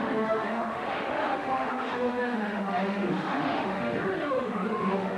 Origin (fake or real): fake